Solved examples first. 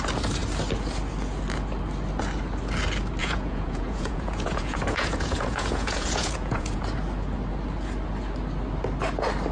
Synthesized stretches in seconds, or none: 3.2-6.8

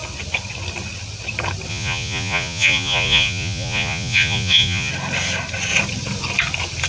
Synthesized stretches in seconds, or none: 1.7-4.9

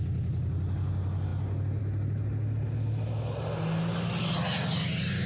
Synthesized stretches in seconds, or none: none

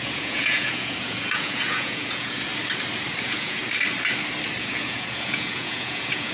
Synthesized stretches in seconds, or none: 0.0-2.5; 3.2-3.6; 4.6-6.3

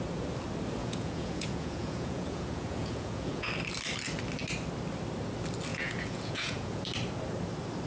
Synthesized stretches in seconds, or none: 0.8-3.5; 5.7-6.9

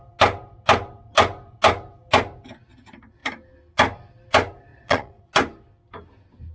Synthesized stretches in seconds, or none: 4.7-5.3

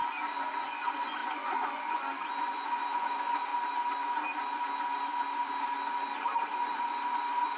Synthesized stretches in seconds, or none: 0.6-3.5; 6.7-7.6

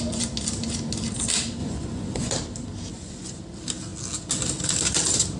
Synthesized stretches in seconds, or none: 1.6-2.3; 2.9-3.4